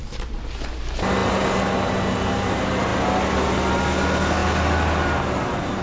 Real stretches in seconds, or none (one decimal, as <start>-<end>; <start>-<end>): 0.0-5.8